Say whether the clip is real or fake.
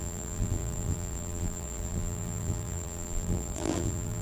fake